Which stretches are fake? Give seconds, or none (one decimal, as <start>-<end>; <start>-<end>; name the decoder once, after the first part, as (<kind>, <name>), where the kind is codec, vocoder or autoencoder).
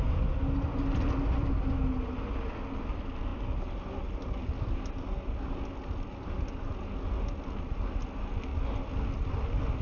none